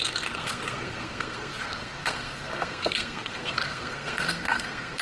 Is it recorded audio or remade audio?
remade